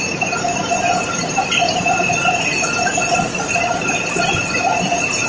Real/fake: fake